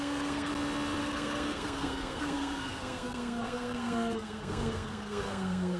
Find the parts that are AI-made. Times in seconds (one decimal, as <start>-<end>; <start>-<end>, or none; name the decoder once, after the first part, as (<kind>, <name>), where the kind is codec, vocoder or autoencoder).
0.0-0.5 (codec, SNAC); 1.0-5.8